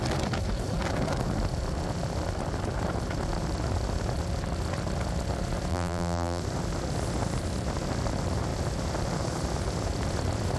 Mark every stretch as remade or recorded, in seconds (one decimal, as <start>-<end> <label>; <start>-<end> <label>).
0.0-5.7 recorded; 5.7-6.4 remade; 6.4-10.6 recorded